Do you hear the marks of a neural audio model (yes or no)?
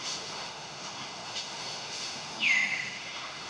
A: yes